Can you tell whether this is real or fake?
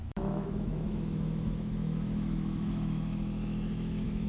fake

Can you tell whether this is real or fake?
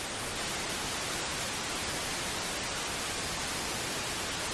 real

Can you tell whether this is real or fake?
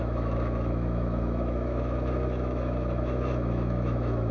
fake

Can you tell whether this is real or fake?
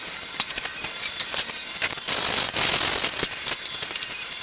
real